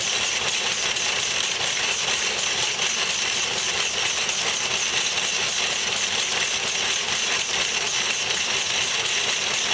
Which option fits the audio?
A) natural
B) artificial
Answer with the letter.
A